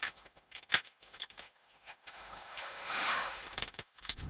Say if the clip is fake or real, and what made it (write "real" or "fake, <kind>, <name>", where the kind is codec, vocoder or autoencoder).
fake, autoencoder, DAC-VAE